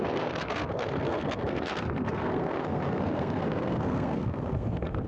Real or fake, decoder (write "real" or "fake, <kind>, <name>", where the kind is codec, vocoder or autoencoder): fake, codec, SNAC